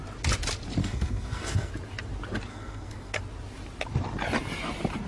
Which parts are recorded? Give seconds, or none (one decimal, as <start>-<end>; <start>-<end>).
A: 0.0-0.8; 1.7-2.5; 3.2-5.1